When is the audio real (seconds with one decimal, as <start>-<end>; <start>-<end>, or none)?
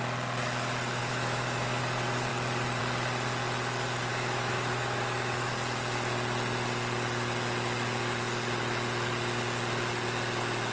0.0-1.0; 1.8-4.1; 5.5-10.7